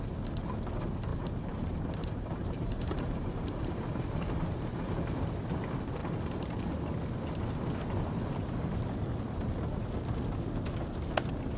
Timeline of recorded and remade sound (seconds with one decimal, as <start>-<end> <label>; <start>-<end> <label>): 0.0-1.1 recorded; 1.1-5.4 remade; 5.4-6.0 recorded; 6.0-6.7 remade; 6.7-11.6 recorded